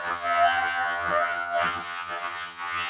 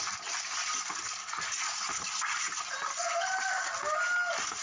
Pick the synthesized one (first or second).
first